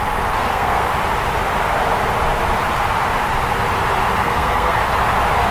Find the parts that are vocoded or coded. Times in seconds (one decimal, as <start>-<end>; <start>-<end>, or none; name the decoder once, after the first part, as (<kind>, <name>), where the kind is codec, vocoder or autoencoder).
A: 0.4-0.9 (codec, SNAC); 4.2-4.8